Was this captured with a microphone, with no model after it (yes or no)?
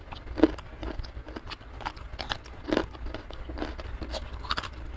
yes